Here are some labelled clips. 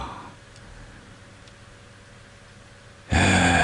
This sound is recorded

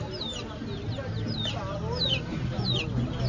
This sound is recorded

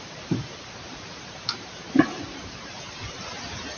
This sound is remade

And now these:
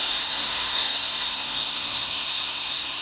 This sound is remade